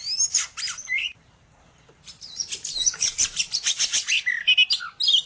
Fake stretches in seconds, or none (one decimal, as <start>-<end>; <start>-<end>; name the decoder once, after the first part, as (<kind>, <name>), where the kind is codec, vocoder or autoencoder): 0.8-4.0 (vocoder, BigVGAN v2)